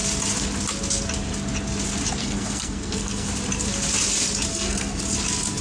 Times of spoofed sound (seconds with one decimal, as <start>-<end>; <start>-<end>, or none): 2.2-3.3; 4.5-5.0